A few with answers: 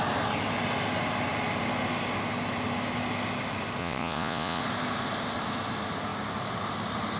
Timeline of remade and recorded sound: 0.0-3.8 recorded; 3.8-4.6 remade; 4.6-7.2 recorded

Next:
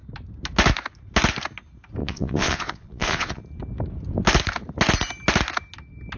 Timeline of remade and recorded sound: 0.0-2.0 recorded; 2.0-3.4 remade; 3.4-6.2 recorded

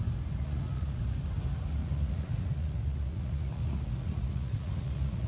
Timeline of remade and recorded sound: 0.0-0.4 recorded; 0.4-1.0 remade; 1.0-1.8 recorded; 1.8-5.3 remade

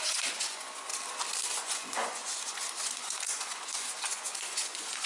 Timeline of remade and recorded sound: 0.0-0.9 remade; 0.9-1.6 recorded; 1.6-5.1 remade

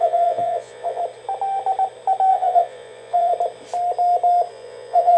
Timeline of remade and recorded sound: 0.0-1.0 remade; 1.0-2.3 recorded; 2.3-3.3 remade; 3.3-4.5 recorded; 4.5-5.2 remade